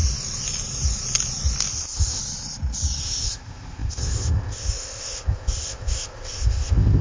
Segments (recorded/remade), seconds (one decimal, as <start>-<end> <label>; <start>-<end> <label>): 0.0-1.7 recorded; 1.7-2.2 remade; 2.2-3.0 recorded; 3.0-7.0 remade